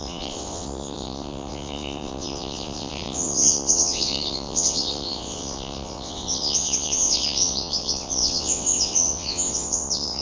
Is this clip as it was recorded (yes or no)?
no